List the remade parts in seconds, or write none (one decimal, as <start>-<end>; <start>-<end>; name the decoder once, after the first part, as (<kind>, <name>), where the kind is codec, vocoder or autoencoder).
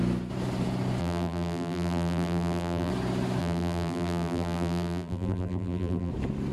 1.0-2.9 (vocoder, BigVGAN v2); 3.4-6.1